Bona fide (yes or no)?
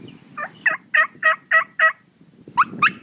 yes